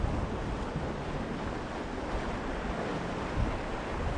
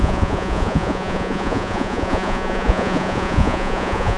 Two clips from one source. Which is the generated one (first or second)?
second